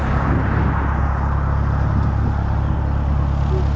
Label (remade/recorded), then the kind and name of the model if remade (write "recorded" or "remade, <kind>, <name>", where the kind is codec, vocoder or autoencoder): recorded